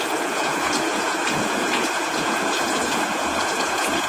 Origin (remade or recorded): remade